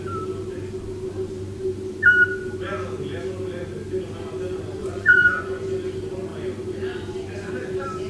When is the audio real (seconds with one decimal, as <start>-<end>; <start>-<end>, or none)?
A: 0.0-4.8; 5.6-8.1